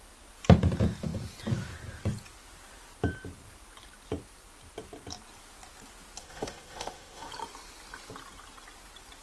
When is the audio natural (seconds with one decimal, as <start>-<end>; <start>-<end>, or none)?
0.0-6.2; 7.3-9.2